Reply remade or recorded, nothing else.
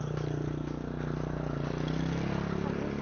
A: recorded